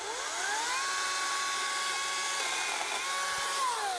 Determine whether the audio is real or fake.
real